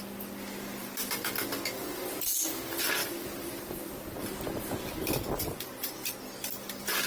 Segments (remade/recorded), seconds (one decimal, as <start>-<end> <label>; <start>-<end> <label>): 0.0-7.1 recorded